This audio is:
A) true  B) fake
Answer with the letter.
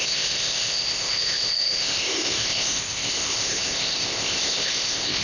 B